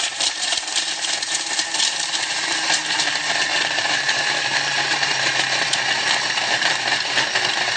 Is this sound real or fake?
fake